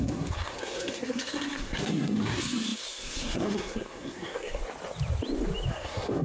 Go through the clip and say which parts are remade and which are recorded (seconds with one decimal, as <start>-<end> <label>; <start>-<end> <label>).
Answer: 0.0-4.6 remade; 4.6-5.7 recorded; 5.7-6.2 remade